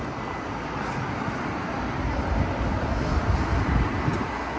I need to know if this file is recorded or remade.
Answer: recorded